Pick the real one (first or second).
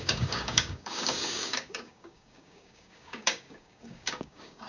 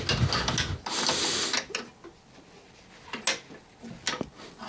second